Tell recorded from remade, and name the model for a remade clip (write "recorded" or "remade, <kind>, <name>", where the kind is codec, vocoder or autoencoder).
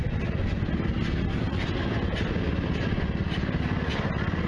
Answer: recorded